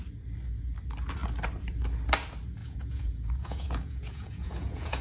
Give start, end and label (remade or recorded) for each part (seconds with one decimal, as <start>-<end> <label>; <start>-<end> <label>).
0.0-2.6 recorded; 2.6-5.0 remade